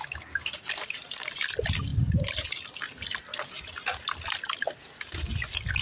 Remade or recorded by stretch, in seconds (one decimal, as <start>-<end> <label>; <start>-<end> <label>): 0.0-3.3 recorded; 3.3-4.4 remade; 4.4-5.8 recorded